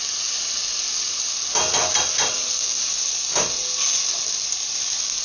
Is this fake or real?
real